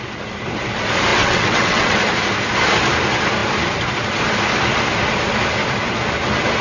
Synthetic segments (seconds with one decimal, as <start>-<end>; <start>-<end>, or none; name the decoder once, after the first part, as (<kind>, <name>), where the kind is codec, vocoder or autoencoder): 1.1-2.0 (vocoder, WaveNeXt)